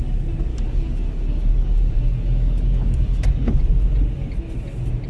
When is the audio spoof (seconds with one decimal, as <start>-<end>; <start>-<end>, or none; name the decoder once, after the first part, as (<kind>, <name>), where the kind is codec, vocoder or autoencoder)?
0.5-3.6 (codec, DAC)